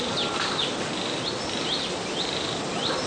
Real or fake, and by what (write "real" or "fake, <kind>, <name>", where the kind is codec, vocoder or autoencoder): real